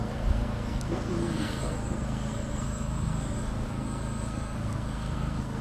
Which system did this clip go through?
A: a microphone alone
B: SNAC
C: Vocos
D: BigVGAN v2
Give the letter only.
B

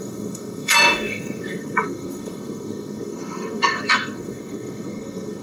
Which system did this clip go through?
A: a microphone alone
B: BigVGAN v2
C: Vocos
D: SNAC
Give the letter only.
D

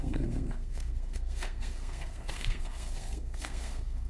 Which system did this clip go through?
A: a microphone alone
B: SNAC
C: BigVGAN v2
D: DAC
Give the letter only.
B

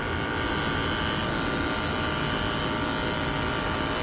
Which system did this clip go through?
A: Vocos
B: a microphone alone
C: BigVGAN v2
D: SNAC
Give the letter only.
B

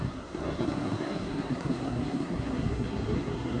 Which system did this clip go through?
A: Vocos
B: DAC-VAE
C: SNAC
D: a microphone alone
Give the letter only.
C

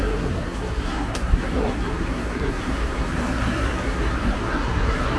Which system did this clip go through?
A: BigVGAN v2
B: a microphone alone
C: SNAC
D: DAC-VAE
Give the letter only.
C